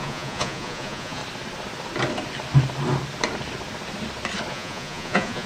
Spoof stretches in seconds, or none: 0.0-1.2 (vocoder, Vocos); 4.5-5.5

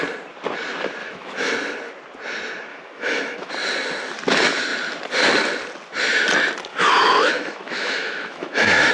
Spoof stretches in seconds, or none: 1.0-1.5 (autoencoder, DAC-VAE); 2.7-3.5; 6.7-8.9

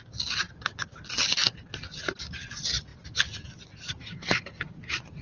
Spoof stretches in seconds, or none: none

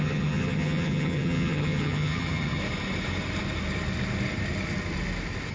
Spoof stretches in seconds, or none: 0.0-2.6 (vocoder, HiFi-GAN)

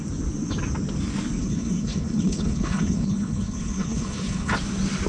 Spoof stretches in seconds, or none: 1.4-4.5 (codec, HILCodec)

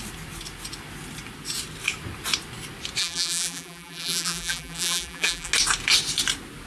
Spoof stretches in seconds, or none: 3.0-5.5 (vocoder, BigVGAN v2)